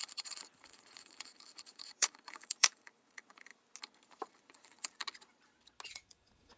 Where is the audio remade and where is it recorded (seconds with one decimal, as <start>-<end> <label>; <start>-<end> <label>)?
0.0-3.5 remade; 3.5-4.3 recorded; 4.3-5.0 remade; 5.0-5.9 recorded; 5.9-6.6 remade